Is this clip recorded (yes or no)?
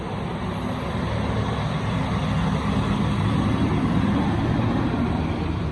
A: yes